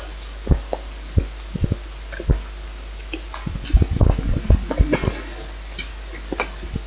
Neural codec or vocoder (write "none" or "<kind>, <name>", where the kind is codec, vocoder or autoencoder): none